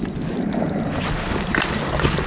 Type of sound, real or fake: real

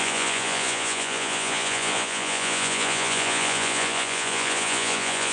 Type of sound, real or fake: fake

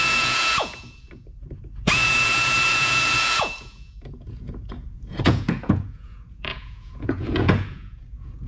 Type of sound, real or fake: fake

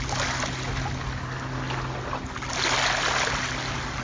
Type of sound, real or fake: real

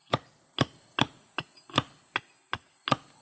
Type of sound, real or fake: real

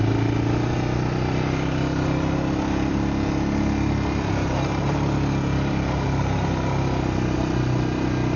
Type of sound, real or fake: real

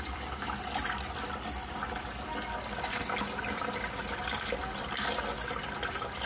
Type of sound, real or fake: real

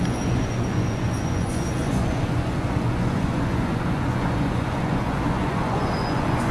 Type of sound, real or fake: fake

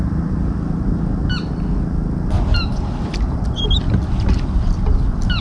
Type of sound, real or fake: real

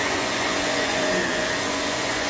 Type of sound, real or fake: fake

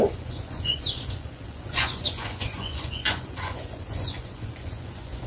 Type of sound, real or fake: fake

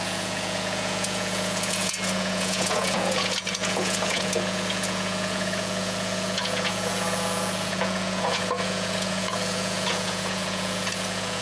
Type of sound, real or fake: fake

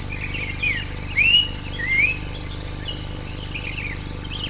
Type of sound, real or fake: real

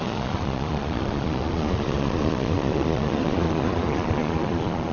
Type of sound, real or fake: fake